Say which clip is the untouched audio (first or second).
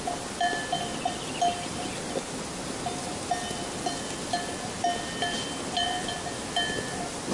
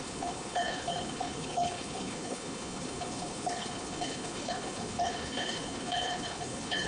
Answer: first